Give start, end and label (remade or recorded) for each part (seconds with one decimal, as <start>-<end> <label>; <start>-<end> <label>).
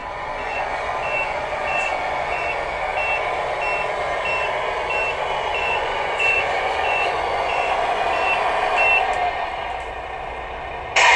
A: 0.0-2.5 remade; 2.5-5.6 recorded; 5.6-8.0 remade; 8.0-11.2 recorded